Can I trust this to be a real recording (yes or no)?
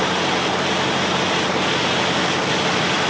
yes